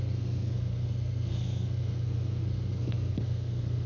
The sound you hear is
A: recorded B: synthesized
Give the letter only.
B